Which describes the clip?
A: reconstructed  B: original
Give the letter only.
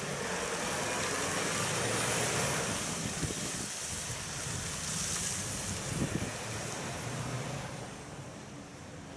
B